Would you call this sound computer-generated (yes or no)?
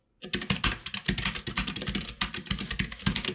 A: no